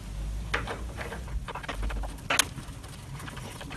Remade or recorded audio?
recorded